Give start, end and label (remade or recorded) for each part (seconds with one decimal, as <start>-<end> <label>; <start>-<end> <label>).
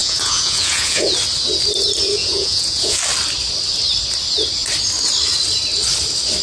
0.0-1.1 remade; 1.1-2.2 recorded; 2.2-3.0 remade; 3.0-6.4 recorded